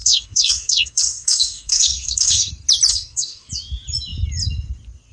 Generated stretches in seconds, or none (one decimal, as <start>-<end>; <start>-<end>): 0.0-2.5; 2.9-3.5